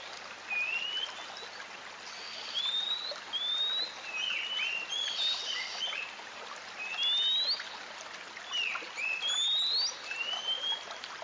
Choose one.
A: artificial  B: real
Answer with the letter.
B